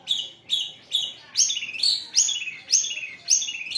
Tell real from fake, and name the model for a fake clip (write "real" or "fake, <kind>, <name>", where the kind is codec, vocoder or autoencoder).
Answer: real